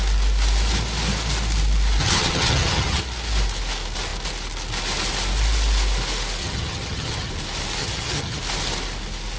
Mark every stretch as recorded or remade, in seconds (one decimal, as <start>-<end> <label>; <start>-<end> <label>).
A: 0.0-2.0 recorded; 2.0-3.0 remade; 3.0-6.4 recorded; 6.4-7.3 remade; 7.3-7.8 recorded; 7.8-8.4 remade; 8.4-9.4 recorded